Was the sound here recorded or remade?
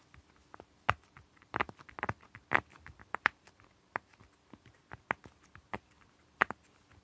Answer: recorded